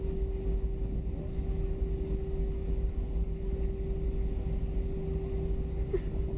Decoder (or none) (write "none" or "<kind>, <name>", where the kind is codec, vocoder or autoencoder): none